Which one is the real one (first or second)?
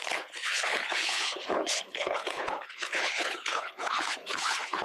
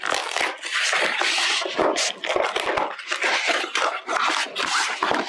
second